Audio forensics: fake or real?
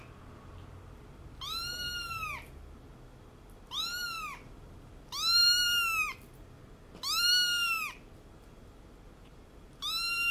real